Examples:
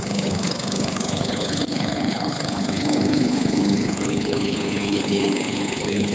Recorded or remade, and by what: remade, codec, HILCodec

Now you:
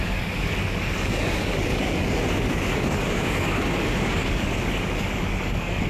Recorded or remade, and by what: remade, codec, DAC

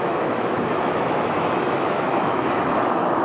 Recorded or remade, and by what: remade, autoencoder, DAC-VAE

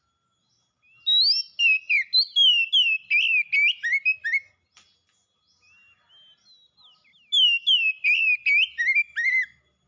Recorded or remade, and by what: recorded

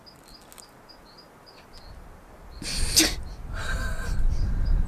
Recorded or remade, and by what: recorded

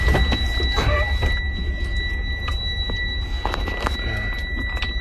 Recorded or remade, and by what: recorded